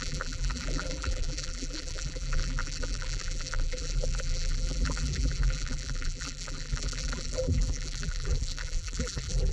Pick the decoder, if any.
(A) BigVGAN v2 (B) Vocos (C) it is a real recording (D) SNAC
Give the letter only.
A